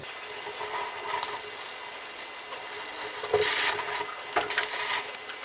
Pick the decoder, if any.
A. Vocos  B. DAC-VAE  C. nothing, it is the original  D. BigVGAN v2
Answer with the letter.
C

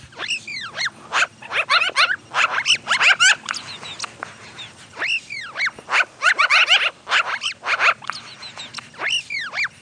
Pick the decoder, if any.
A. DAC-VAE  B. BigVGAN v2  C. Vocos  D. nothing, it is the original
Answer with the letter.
D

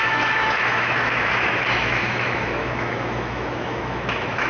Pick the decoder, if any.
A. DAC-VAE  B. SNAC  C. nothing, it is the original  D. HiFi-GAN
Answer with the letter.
A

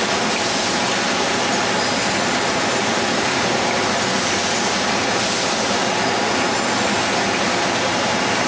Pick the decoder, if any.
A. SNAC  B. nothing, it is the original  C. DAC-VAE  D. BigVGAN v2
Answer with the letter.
B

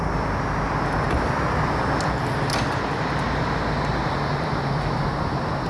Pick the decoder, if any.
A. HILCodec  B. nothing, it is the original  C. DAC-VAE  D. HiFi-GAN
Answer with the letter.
B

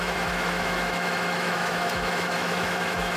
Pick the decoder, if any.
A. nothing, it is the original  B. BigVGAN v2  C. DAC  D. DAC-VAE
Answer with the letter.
D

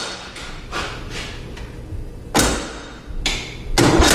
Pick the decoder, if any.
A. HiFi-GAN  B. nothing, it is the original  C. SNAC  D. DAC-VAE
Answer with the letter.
B